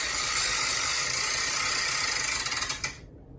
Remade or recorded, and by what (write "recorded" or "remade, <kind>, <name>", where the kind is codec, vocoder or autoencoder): recorded